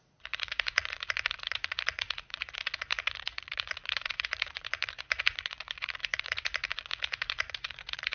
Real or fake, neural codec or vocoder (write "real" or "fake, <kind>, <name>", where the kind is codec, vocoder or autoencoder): fake, vocoder, Vocos